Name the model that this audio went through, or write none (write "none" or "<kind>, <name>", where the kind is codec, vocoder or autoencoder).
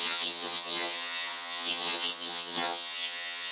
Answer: vocoder, HiFi-GAN